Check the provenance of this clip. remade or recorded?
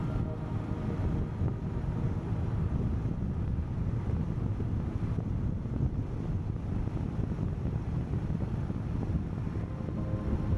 recorded